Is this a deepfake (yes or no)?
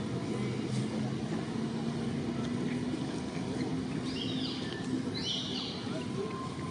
no